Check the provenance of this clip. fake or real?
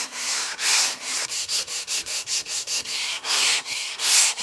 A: fake